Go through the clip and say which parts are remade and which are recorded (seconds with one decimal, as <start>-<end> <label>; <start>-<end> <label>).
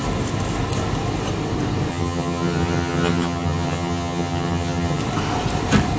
0.0-1.9 recorded; 1.9-5.0 remade; 5.0-6.0 recorded